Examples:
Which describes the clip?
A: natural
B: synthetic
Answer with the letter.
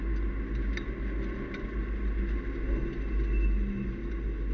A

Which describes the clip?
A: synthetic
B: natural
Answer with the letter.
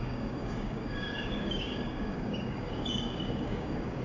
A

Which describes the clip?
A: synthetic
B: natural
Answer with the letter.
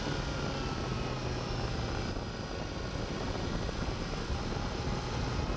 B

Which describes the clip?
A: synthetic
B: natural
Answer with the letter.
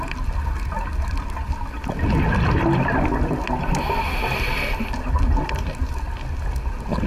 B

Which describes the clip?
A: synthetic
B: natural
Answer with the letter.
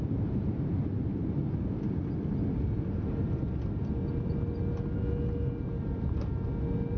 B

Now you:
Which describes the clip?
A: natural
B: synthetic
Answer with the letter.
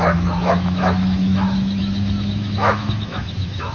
B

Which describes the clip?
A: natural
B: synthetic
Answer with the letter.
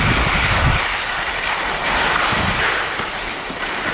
A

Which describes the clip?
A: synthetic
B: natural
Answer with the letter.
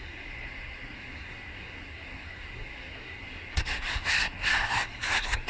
A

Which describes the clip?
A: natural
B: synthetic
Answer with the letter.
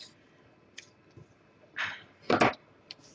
A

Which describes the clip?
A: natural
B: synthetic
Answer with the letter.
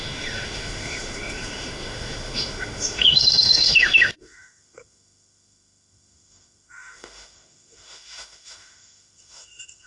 B